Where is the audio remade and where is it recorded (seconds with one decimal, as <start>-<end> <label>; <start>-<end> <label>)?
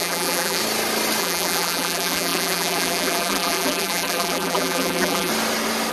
0.0-0.6 remade; 0.6-1.2 recorded; 1.2-5.3 remade; 5.3-5.9 recorded